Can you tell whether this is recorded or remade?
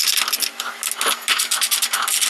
recorded